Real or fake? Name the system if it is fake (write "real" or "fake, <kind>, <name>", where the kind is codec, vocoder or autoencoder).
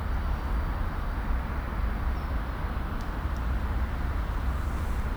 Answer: real